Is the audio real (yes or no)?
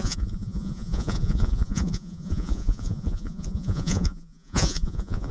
no